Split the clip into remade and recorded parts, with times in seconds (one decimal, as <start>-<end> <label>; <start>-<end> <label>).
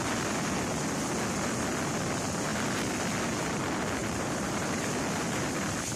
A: 0.0-4.0 recorded; 4.0-4.9 remade; 4.9-6.0 recorded